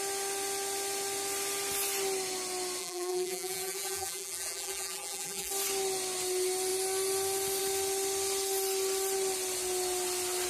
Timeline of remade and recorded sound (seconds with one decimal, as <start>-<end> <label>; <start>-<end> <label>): 0.0-2.8 recorded; 2.8-5.5 remade; 5.5-10.5 recorded